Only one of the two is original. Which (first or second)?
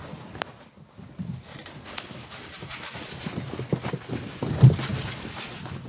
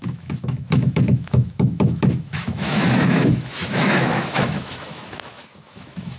first